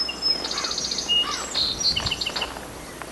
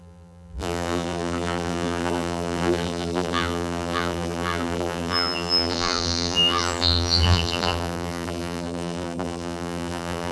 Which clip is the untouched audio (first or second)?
first